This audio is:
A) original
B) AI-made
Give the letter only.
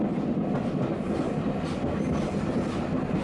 A